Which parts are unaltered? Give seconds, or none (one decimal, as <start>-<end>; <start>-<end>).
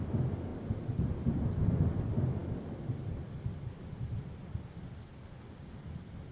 0.0-6.3